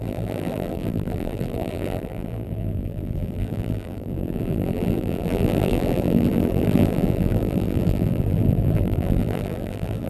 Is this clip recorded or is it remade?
remade